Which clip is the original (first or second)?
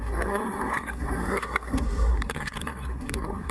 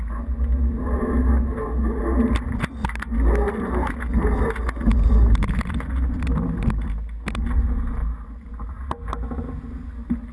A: second